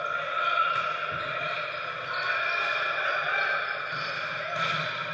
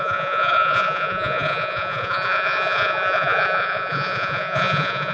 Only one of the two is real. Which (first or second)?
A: first